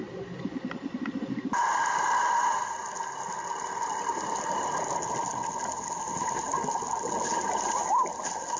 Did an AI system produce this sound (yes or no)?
no